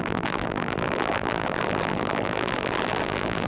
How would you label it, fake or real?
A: fake